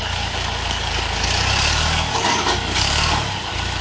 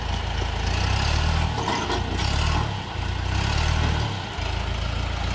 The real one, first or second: second